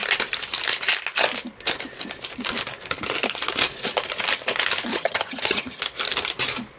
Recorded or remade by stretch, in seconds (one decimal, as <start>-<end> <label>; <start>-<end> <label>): 0.0-4.9 recorded; 4.9-5.8 remade; 5.8-6.8 recorded